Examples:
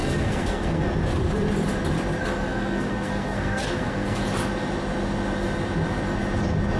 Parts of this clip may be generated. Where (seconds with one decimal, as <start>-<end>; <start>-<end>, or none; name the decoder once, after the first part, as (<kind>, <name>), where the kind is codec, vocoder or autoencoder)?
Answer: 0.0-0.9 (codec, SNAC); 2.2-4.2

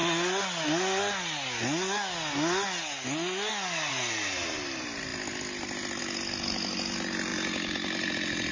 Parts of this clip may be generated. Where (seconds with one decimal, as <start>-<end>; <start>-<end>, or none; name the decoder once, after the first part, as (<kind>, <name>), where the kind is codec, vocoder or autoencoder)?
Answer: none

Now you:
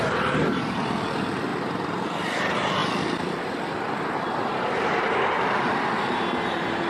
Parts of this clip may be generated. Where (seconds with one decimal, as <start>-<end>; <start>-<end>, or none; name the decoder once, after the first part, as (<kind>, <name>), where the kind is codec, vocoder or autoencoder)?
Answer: none

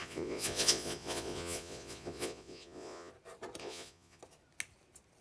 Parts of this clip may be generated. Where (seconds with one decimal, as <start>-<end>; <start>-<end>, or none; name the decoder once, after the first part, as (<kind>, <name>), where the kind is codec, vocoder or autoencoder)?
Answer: 0.0-3.1 (vocoder, Vocos); 3.6-4.2